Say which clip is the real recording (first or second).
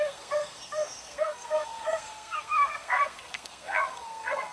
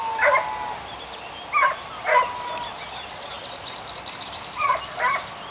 second